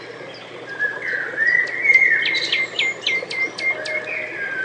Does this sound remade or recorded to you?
remade